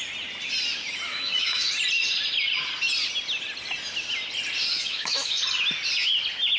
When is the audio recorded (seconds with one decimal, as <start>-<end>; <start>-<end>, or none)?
0.0-1.1; 1.7-4.7; 5.4-6.6